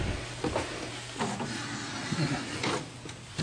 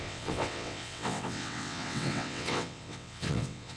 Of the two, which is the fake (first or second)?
second